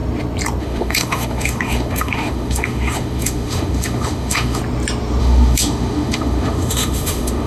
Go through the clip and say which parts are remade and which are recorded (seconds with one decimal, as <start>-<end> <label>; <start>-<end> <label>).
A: 0.0-0.6 recorded; 0.6-4.6 remade; 4.6-5.2 recorded; 5.2-7.5 remade